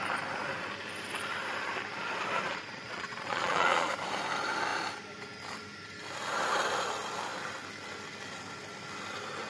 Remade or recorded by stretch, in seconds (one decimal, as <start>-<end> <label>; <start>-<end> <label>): 0.0-2.5 recorded; 2.5-3.9 remade; 3.9-9.5 recorded